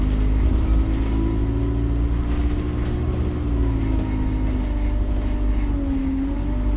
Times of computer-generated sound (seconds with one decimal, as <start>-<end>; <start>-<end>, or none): none